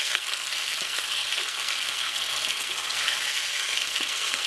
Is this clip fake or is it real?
fake